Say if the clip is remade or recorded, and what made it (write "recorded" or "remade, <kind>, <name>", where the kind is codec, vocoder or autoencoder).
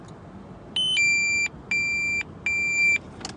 recorded